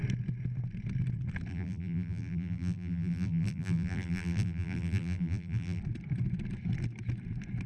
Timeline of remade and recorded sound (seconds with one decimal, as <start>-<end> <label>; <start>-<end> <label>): 0.0-1.5 recorded; 1.5-5.8 remade; 5.8-7.7 recorded